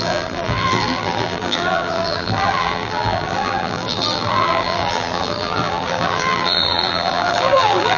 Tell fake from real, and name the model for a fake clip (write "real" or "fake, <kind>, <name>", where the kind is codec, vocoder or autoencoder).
fake, vocoder, BigVGAN v2